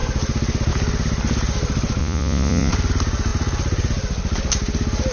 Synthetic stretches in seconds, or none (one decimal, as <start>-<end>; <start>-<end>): 2.0-2.7